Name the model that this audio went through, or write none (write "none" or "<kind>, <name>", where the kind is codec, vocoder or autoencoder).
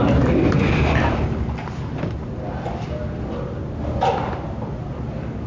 none